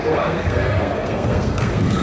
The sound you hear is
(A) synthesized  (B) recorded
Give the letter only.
A